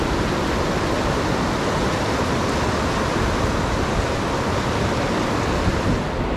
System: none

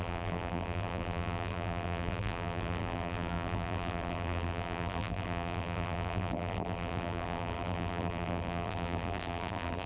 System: vocoder, BigVGAN v2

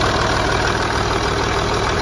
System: vocoder, BigVGAN v2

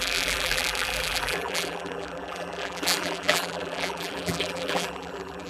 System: vocoder, BigVGAN v2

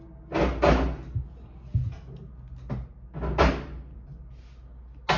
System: none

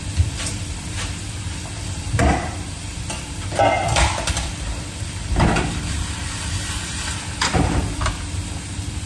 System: vocoder, BigVGAN v2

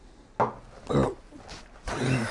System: none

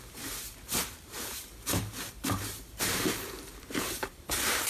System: vocoder, BigVGAN v2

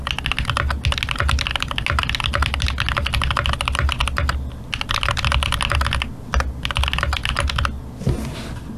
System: none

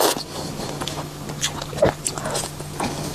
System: none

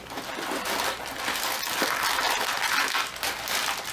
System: none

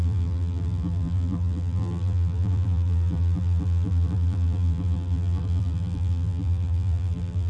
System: vocoder, BigVGAN v2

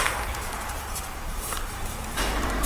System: vocoder, BigVGAN v2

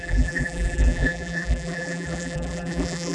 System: vocoder, BigVGAN v2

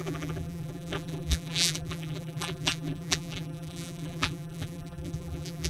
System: vocoder, BigVGAN v2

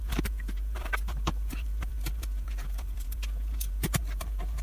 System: vocoder, BigVGAN v2